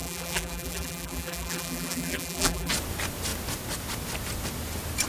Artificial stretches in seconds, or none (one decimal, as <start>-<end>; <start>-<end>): 0.0-2.7